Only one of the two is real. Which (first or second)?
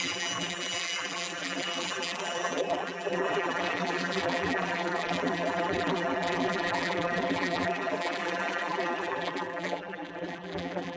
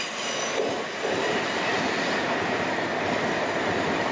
second